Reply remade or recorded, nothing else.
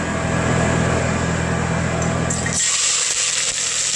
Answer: recorded